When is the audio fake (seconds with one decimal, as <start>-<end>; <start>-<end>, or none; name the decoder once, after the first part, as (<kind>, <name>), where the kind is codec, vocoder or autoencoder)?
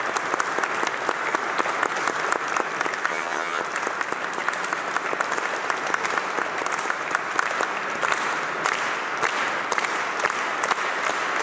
3.1-3.6 (vocoder, HiFi-GAN)